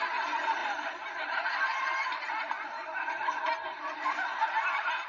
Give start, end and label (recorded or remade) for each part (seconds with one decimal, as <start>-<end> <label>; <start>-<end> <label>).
0.0-5.1 recorded